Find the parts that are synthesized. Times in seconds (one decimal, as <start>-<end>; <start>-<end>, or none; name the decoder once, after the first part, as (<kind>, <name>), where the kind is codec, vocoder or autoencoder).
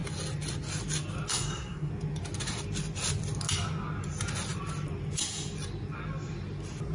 1.3-1.9 (codec, SNAC)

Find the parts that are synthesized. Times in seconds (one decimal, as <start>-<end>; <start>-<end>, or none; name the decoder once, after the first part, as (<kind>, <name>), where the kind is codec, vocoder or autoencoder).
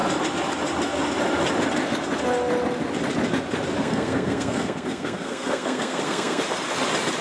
3.8-6.4 (codec, SNAC)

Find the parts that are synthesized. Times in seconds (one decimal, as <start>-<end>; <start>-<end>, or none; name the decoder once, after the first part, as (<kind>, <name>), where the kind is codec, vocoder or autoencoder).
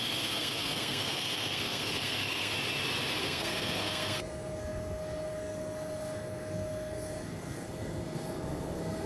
0.0-2.5 (codec, SNAC); 3.2-9.1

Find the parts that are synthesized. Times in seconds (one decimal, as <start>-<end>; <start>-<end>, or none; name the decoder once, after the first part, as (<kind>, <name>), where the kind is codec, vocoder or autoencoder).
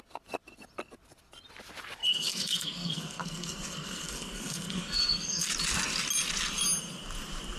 2.0-5.5 (codec, SNAC)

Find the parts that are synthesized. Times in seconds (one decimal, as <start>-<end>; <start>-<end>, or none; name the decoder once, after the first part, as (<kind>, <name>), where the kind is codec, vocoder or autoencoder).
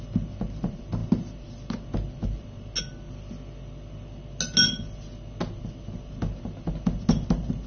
none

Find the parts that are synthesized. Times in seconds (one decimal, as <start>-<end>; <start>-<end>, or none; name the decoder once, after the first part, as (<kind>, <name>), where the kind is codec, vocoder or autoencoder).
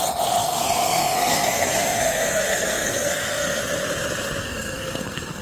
0.4-3.6 (codec, SNAC); 4.4-5.4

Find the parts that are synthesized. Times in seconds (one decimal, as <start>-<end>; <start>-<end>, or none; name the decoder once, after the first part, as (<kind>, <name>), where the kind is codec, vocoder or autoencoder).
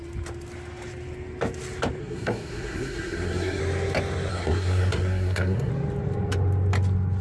2.0-3.6 (codec, SNAC); 4.3-5.7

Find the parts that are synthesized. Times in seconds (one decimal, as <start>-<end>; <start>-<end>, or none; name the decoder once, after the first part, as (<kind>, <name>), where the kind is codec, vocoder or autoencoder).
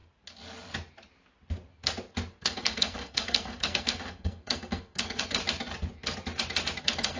2.4-5.4 (codec, SNAC); 6.8-7.2